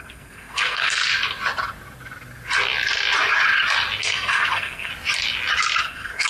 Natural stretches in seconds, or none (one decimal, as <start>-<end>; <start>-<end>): 1.0-4.0; 4.9-5.8